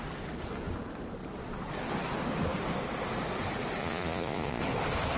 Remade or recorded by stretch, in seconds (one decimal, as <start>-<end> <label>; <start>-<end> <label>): 0.0-3.8 recorded; 3.8-4.6 remade; 4.6-5.2 recorded